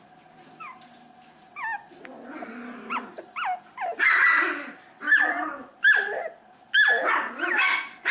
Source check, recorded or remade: recorded